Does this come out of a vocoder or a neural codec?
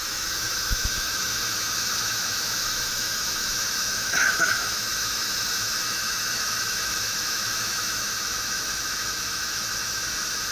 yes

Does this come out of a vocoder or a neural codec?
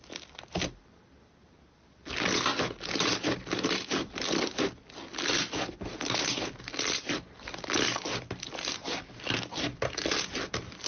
no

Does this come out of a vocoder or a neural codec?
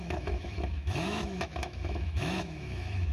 yes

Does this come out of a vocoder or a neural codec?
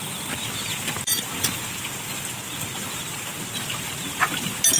no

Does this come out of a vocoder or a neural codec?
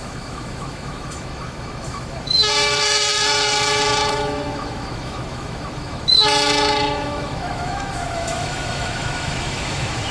yes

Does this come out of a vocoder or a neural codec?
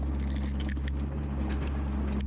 no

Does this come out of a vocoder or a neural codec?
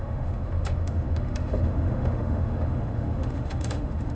yes